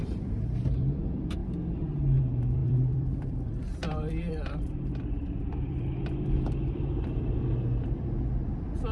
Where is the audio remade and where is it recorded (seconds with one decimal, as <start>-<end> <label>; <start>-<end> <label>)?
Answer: 0.0-1.4 remade; 1.4-2.2 recorded; 2.2-8.9 remade